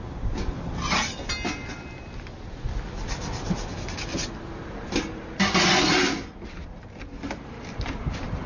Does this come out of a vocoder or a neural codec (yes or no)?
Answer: no